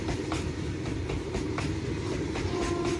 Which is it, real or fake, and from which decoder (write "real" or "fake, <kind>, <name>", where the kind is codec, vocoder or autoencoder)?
fake, vocoder, BigVGAN v2